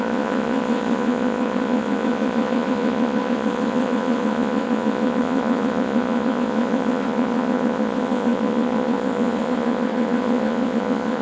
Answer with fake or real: fake